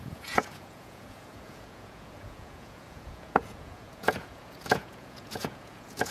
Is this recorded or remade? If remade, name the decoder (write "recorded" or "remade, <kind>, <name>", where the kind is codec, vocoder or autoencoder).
remade, vocoder, Vocos